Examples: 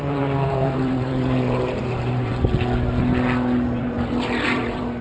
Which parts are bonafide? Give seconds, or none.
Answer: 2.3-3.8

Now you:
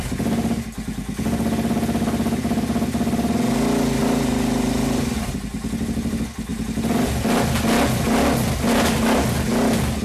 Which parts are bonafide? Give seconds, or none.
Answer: 0.0-4.0; 5.3-10.0

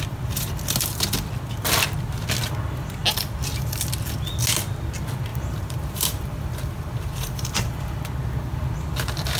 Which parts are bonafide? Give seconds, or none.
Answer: 0.0-5.3; 8.0-9.4

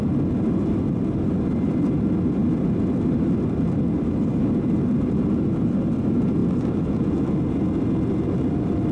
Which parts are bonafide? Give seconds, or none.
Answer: 0.0-8.9